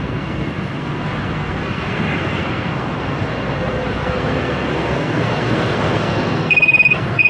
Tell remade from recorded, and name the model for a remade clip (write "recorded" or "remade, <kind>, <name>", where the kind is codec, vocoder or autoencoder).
remade, codec, SNAC